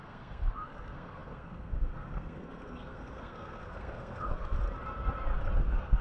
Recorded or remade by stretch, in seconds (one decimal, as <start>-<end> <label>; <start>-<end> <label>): 0.0-4.6 remade; 4.6-5.6 recorded; 5.6-6.0 remade